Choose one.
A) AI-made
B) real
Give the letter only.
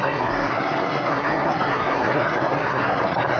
A